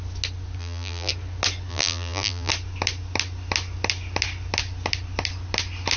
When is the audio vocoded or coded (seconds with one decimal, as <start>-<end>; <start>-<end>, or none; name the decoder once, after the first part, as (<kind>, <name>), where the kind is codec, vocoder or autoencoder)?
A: 0.6-1.1 (vocoder, BigVGAN v2); 1.7-2.5